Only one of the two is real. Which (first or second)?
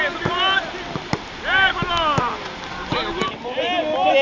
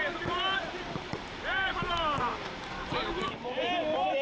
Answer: first